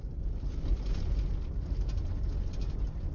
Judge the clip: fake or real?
real